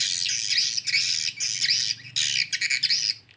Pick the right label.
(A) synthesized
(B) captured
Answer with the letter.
B